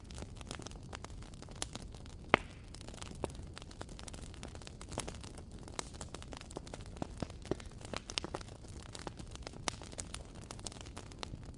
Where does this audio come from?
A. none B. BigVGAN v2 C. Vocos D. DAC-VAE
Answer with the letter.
A